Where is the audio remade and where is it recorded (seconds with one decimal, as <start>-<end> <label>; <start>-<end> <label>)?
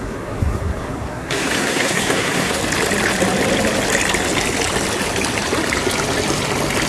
0.0-2.6 remade; 2.6-6.9 recorded